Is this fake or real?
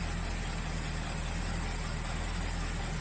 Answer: real